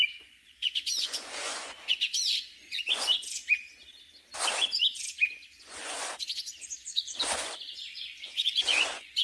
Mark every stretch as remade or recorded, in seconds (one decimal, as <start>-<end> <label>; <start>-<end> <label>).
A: 0.0-3.4 remade; 3.4-5.6 recorded; 5.6-9.2 remade